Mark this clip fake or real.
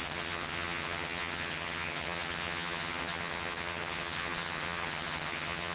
fake